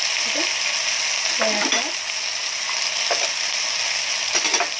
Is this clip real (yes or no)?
yes